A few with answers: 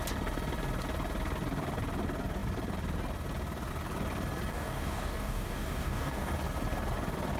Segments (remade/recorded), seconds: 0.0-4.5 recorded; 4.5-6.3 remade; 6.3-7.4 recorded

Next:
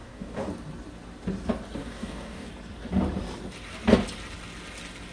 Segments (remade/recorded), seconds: 0.0-0.5 remade; 0.5-1.8 recorded; 1.8-2.5 remade; 2.5-5.1 recorded

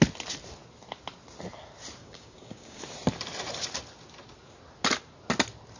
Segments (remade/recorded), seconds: 0.0-2.0 recorded; 2.0-2.8 remade; 2.8-5.8 recorded